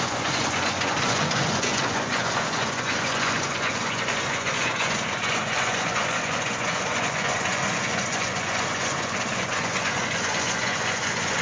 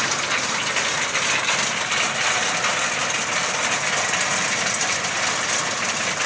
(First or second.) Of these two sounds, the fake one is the first